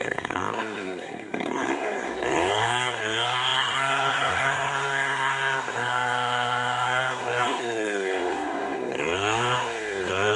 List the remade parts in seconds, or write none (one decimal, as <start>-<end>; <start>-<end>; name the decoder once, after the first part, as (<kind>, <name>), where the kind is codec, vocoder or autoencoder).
0.0-10.4 (codec, SNAC)